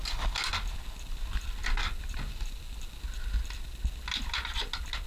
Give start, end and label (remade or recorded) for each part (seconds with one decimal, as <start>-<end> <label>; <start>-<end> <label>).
0.0-5.1 recorded